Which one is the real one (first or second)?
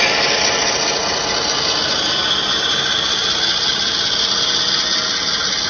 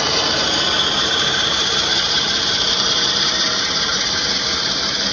first